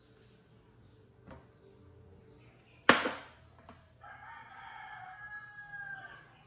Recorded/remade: recorded